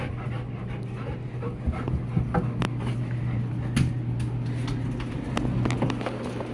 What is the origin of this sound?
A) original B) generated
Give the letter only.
A